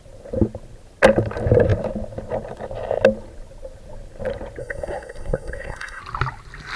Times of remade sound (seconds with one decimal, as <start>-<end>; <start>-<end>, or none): 4.6-6.0